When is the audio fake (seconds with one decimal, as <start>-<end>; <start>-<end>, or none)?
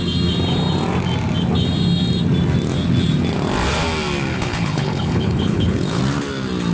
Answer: 4.3-6.0